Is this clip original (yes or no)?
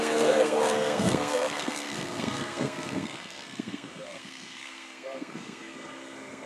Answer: no